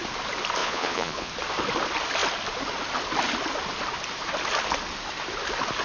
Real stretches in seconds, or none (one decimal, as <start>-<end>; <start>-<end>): 0.0-0.6; 1.3-5.8